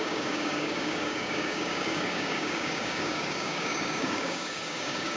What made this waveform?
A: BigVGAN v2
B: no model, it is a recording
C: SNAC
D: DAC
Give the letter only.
D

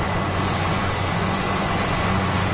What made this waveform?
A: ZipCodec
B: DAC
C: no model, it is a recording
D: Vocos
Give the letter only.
D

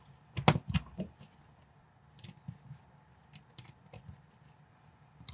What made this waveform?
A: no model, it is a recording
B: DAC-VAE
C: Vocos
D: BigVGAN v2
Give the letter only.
A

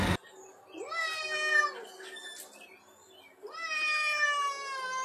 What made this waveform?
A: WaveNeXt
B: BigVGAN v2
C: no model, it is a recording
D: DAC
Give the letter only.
C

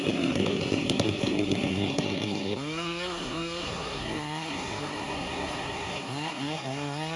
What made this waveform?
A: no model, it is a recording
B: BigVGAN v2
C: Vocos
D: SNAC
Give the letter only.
D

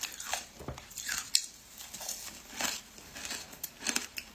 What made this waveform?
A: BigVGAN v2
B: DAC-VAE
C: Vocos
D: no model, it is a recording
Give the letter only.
A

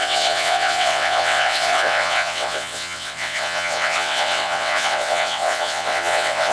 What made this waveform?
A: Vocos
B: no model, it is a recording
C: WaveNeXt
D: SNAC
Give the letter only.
C